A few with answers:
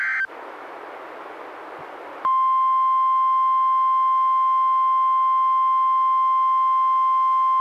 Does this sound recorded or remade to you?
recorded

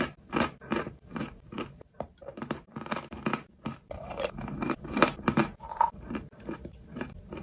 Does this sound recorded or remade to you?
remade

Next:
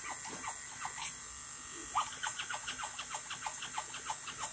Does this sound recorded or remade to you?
recorded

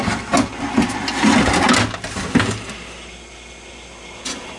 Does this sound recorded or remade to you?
recorded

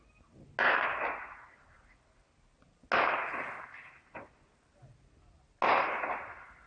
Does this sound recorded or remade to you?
recorded